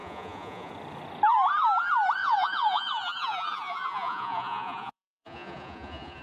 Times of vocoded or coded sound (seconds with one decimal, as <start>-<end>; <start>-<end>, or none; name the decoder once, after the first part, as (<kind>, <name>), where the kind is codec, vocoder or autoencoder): 0.0-0.7 (vocoder, Vocos); 2.2-6.2